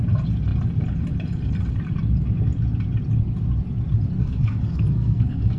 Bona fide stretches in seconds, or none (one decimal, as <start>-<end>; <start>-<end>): 0.0-4.2